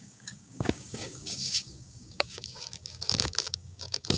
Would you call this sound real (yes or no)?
no